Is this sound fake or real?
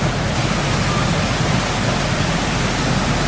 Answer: real